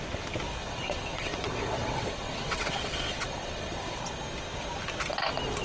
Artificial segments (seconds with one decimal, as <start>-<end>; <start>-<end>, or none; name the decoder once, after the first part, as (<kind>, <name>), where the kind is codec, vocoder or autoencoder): 0.6-4.0 (vocoder, WaveNeXt)